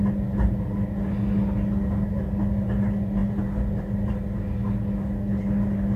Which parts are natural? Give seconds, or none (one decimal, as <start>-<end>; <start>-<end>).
0.0-6.0